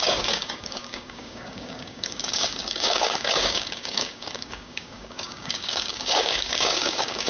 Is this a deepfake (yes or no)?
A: yes